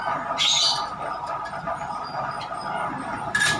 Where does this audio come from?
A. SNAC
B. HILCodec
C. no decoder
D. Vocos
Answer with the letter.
C